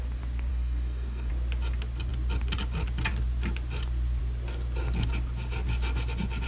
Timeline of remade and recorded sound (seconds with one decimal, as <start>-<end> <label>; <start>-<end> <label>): 0.0-0.5 recorded; 0.5-1.3 remade; 1.3-6.5 recorded